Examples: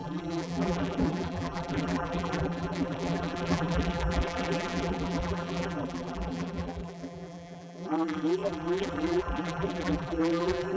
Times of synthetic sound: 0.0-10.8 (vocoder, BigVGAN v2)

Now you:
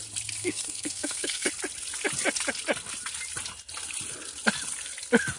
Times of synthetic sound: 0.4-1.5 (codec, SNAC)

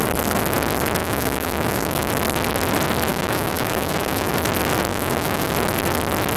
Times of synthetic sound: 1.0-2.1 (autoencoder, DAC-VAE); 3.1-4.3; 4.9-5.5

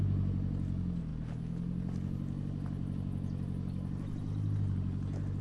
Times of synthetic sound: none

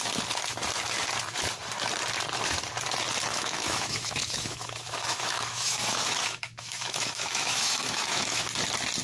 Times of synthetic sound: 3.3-8.4 (autoencoder, DAC-VAE)